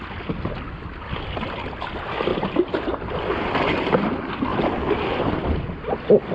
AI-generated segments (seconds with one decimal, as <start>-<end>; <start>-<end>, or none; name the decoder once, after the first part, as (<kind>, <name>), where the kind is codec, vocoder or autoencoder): 2.3-3.0 (vocoder, BigVGAN v2)